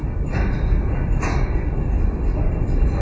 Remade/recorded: recorded